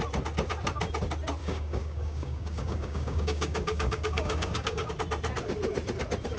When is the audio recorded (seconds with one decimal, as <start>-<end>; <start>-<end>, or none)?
0.0-1.4; 4.9-6.4